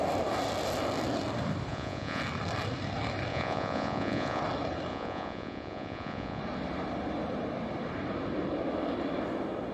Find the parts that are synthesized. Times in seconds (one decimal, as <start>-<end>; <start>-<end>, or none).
1.7-2.2; 3.3-4.4; 4.9-6.4